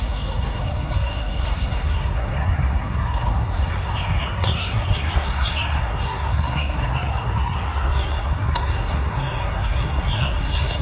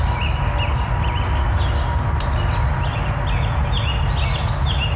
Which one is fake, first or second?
first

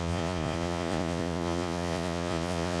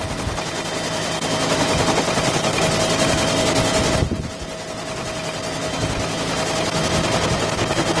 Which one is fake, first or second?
first